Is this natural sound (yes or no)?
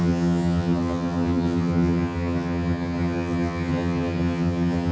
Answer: no